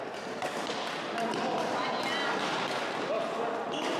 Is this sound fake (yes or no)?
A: no